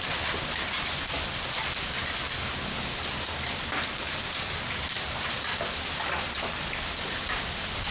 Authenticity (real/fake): real